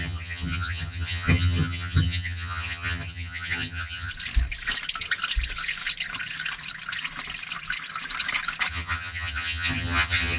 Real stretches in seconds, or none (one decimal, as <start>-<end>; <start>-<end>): 4.1-8.7